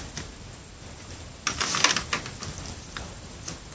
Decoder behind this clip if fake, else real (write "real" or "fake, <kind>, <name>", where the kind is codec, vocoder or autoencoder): real